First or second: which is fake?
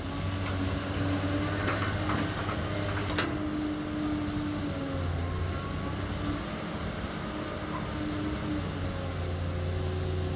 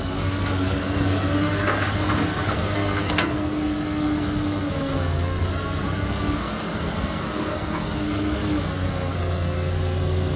second